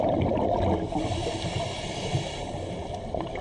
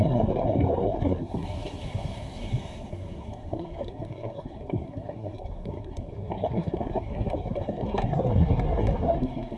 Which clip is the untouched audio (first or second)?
first